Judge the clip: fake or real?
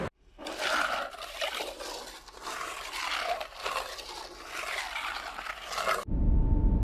real